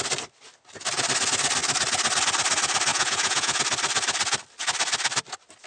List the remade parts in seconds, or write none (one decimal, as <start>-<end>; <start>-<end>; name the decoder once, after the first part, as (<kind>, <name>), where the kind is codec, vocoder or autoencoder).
2.9-3.6 (vocoder, Vocos)